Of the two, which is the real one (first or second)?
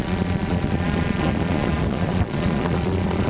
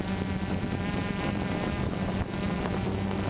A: second